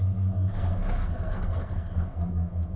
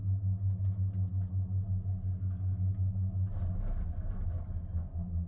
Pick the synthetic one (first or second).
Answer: first